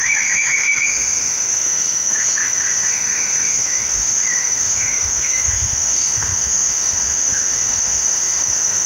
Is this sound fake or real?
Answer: fake